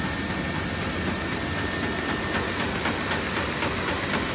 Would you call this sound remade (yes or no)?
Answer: no